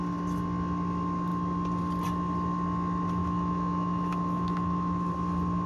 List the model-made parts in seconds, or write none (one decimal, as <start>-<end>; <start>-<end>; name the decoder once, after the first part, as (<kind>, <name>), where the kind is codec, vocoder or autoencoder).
3.2-5.1 (autoencoder, DAC-VAE)